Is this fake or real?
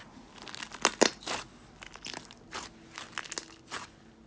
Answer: real